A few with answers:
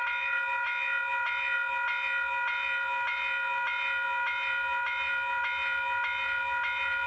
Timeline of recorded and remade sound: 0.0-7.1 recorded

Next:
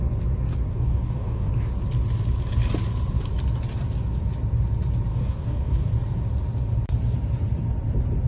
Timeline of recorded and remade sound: 0.0-0.7 recorded; 0.7-1.5 remade; 1.5-5.1 recorded; 5.1-5.9 remade; 5.9-8.3 recorded

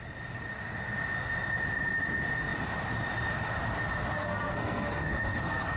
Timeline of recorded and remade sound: 0.0-4.1 recorded; 4.1-5.8 remade

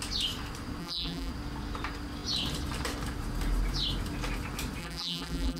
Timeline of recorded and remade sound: 0.0-0.8 recorded; 0.8-1.3 remade; 1.3-4.8 recorded; 4.8-5.6 remade

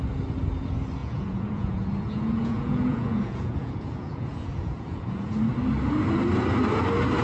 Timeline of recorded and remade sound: 0.0-1.0 recorded; 1.0-5.3 remade; 5.3-7.2 recorded

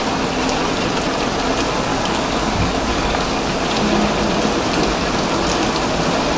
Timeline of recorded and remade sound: 0.0-1.9 recorded; 1.9-3.5 remade; 3.5-6.4 recorded

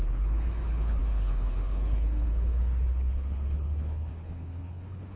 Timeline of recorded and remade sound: 0.0-5.2 remade

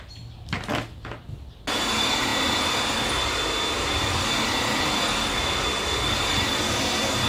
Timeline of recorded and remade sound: 0.0-7.3 recorded